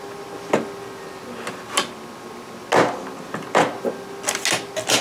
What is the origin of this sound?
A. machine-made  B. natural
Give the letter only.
B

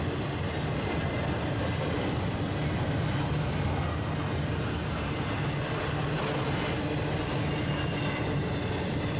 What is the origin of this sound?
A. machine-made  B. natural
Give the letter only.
B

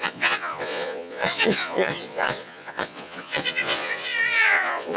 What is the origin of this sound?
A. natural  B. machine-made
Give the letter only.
B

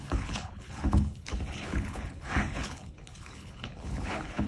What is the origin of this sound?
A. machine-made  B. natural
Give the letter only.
A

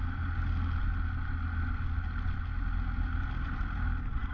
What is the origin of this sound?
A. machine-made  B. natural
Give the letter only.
B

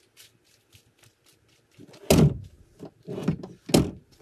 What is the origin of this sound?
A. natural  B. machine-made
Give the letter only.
A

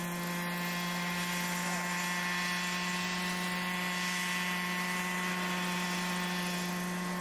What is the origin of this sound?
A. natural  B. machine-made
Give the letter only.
A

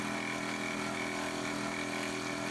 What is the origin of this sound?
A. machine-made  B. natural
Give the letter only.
B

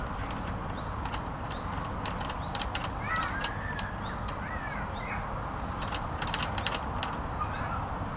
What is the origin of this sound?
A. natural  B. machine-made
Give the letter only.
A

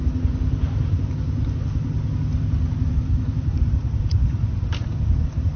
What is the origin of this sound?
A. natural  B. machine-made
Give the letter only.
A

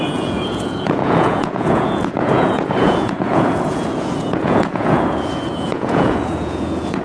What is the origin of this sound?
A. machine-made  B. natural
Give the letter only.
A